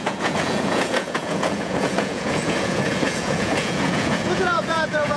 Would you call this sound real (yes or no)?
no